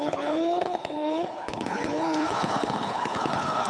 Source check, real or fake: fake